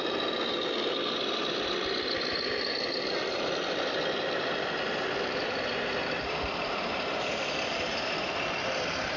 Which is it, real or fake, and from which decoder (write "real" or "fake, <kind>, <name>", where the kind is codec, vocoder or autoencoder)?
real